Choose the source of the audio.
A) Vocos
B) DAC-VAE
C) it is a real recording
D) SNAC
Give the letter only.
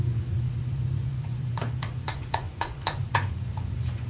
A